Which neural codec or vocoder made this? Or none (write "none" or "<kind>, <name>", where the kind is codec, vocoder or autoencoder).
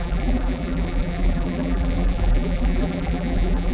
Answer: vocoder, BigVGAN v2